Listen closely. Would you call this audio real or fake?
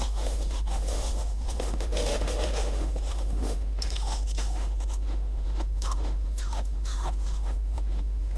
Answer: fake